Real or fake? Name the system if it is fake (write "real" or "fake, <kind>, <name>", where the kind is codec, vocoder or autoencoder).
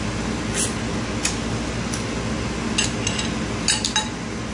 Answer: real